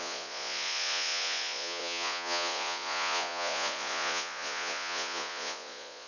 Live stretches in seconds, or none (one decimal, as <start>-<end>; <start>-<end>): none